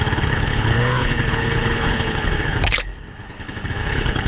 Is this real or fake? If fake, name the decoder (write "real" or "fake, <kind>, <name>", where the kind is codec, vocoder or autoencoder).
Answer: fake, codec, HILCodec